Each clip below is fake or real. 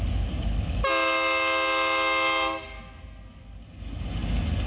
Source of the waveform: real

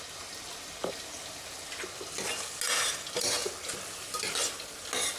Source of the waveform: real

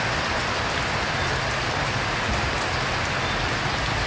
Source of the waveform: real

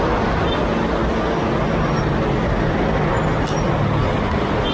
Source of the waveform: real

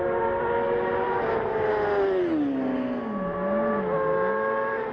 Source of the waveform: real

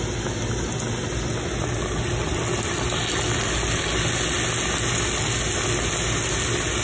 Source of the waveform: real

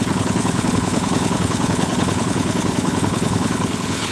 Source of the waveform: fake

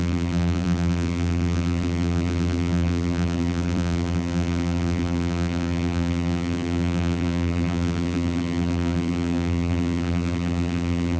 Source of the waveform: fake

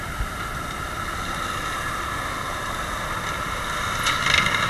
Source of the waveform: real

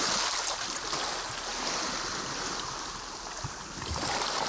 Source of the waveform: real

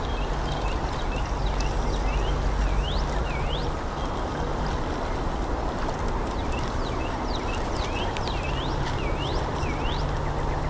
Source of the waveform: real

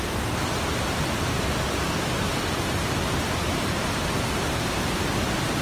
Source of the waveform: real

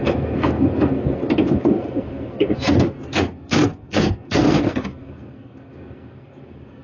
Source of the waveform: fake